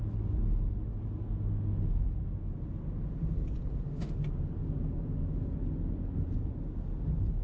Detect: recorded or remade recorded